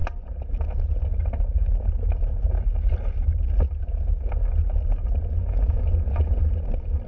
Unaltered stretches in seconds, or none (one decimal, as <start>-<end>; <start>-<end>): 0.0-5.4; 6.2-7.1